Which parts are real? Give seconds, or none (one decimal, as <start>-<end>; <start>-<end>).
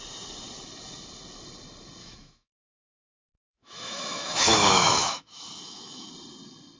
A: 0.0-2.0; 6.1-6.8